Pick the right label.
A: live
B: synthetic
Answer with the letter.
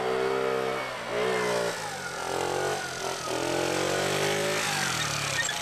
A